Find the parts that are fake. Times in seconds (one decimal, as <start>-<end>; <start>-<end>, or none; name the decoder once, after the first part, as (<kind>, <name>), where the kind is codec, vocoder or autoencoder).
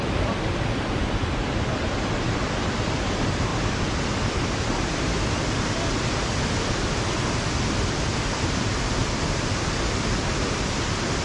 0.0-11.2 (vocoder, BigVGAN v2)